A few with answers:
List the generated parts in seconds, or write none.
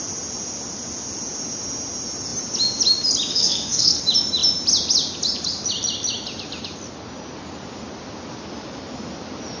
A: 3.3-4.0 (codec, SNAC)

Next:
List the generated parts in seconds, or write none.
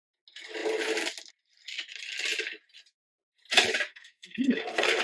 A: 3.9-5.0 (codec, SNAC)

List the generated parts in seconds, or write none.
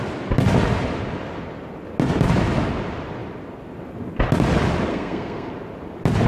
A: 4.9-5.5 (codec, SNAC)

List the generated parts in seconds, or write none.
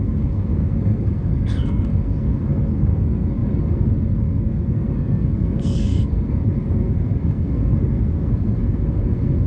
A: 0.0-9.5 (codec, SNAC)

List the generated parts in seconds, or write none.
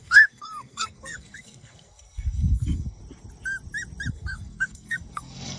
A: 0.0-3.0 (codec, SNAC); 4.1-5.6